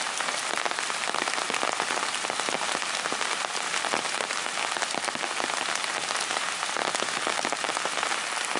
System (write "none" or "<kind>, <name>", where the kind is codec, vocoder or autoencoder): none